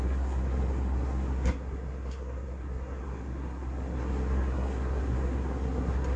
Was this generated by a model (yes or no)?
yes